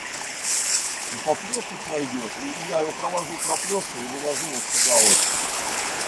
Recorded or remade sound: remade